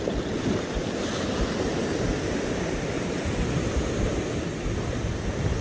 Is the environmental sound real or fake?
real